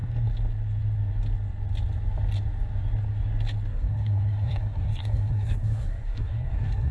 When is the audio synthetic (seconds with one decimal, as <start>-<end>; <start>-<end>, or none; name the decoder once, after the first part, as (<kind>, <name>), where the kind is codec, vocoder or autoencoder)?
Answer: 3.7-6.9 (codec, SNAC)